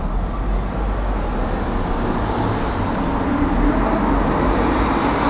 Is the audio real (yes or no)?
yes